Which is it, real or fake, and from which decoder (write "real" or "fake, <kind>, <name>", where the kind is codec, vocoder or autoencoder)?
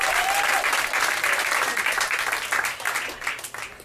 real